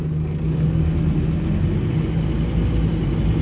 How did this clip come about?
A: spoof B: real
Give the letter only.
B